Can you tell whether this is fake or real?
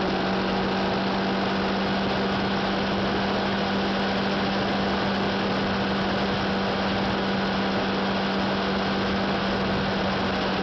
real